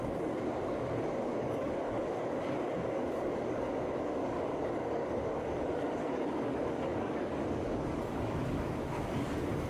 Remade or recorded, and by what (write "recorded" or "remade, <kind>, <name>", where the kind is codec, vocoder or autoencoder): remade, codec, DAC